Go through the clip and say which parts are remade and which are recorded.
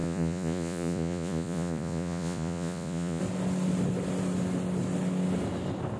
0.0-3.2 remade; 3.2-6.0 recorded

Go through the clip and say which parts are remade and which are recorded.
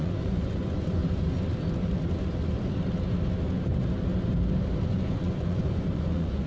0.0-1.0 remade; 1.0-4.9 recorded; 4.9-6.5 remade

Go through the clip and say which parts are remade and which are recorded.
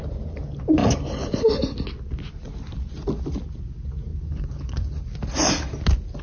0.0-4.1 recorded; 4.1-4.9 remade; 4.9-6.2 recorded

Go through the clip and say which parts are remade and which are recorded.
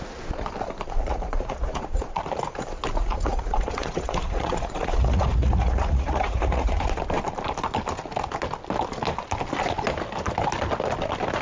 0.0-1.1 recorded; 1.1-2.2 remade; 2.2-3.0 recorded; 3.0-6.8 remade; 6.8-11.4 recorded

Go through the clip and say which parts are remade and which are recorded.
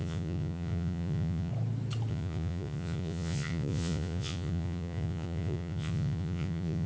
0.0-1.5 remade; 1.5-2.1 recorded; 2.1-6.9 remade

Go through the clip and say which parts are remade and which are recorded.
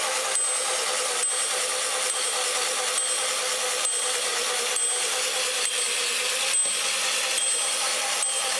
0.0-8.6 recorded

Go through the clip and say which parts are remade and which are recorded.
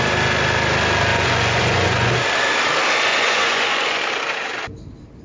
0.0-1.1 recorded; 1.1-2.1 remade; 2.1-3.1 recorded; 3.1-4.0 remade; 4.0-5.2 recorded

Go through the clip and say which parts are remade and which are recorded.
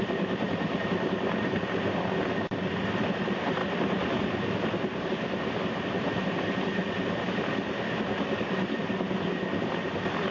0.0-10.3 recorded